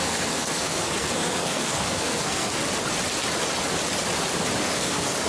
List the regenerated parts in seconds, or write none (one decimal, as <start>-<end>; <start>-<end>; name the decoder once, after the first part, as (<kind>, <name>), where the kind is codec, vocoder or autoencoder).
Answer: 0.0-2.6 (codec, SNAC); 4.6-5.3